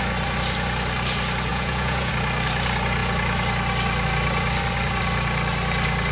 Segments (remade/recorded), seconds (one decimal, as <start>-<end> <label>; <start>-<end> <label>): 0.0-1.5 recorded; 1.5-2.1 remade; 2.1-6.1 recorded